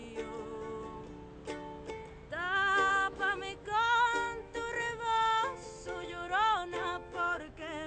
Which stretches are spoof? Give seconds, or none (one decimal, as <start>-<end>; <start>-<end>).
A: 2.9-7.9